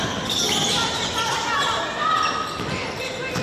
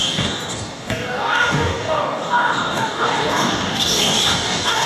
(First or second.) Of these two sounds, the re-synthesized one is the second